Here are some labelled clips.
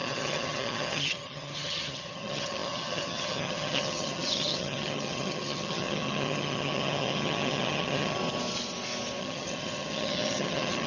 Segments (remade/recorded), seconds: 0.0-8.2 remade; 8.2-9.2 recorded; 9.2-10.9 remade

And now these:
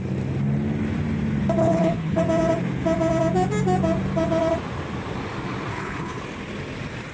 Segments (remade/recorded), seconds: 0.0-1.6 recorded; 1.6-2.2 remade; 2.2-5.7 recorded; 5.7-6.2 remade; 6.2-7.1 recorded

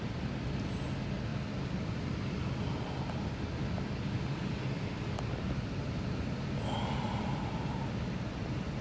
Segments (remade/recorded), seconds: 0.0-8.8 recorded

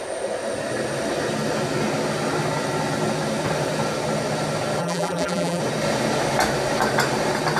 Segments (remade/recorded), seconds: 0.0-4.8 recorded; 4.8-5.6 remade; 5.6-7.6 recorded

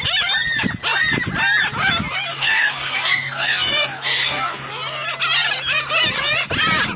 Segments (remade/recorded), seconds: 0.0-2.3 recorded; 2.3-4.7 remade; 4.7-7.0 recorded